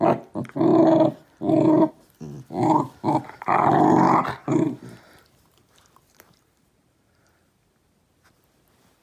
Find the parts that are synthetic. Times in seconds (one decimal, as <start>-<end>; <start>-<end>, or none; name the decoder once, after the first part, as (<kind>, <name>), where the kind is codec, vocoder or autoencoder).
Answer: 4.4-7.2 (vocoder, BigVGAN v2)